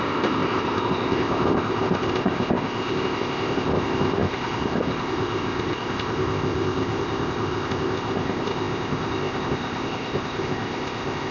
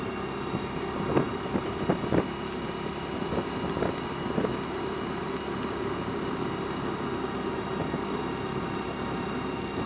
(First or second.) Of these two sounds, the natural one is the second